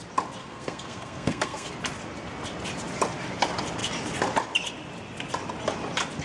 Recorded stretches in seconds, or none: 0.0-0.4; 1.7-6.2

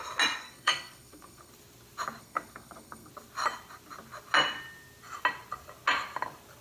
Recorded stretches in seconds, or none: 0.0-0.4; 1.5-2.2; 3.1-6.6

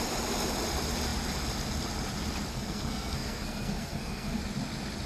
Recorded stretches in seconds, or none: 0.0-2.5; 4.4-5.1